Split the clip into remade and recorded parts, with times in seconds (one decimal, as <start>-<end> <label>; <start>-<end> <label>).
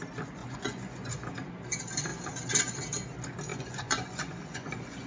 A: 0.0-0.4 recorded; 0.4-1.1 remade; 1.1-3.5 recorded; 3.5-5.1 remade